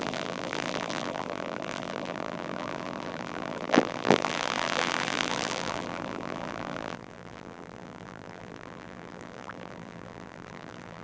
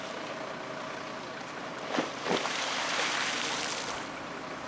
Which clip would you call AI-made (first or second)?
first